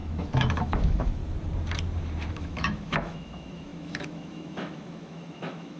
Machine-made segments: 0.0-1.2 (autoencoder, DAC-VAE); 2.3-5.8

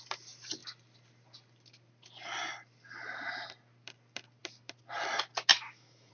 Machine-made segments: 5.5-6.1 (autoencoder, DAC-VAE)

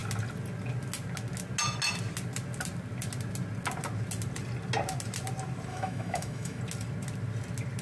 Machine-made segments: 5.7-6.6 (autoencoder, DAC-VAE)